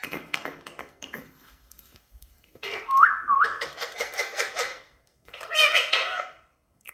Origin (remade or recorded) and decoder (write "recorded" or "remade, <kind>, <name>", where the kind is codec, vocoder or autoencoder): remade, codec, SNAC